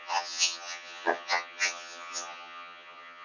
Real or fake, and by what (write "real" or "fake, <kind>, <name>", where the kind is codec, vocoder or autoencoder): fake, vocoder, HiFi-GAN